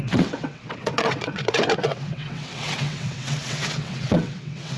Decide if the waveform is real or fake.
fake